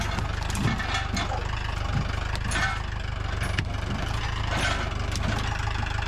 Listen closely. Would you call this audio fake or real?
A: real